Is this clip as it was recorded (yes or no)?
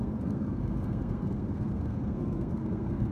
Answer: no